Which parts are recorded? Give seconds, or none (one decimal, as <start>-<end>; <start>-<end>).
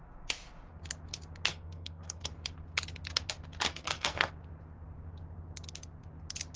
0.0-1.5; 2.3-3.7; 4.3-6.6